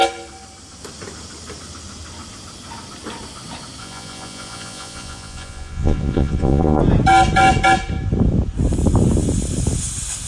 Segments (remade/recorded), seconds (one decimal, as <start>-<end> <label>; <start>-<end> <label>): 0.0-3.8 recorded; 3.8-6.8 remade; 6.8-10.3 recorded